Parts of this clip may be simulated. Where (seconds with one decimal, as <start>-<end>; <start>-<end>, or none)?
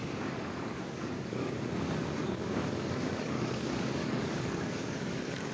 0.0-5.5